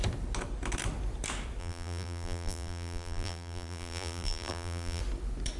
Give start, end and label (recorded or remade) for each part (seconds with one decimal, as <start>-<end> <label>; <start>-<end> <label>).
0.0-1.6 recorded; 1.6-5.0 remade; 5.0-5.6 recorded